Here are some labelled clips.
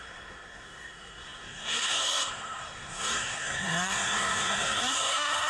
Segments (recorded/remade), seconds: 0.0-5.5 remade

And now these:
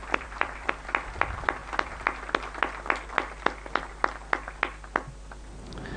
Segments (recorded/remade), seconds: 0.0-0.7 remade; 0.7-6.0 recorded

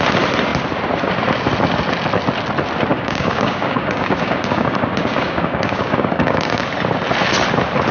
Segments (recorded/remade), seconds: 0.0-2.9 recorded; 2.9-6.6 remade; 6.6-7.9 recorded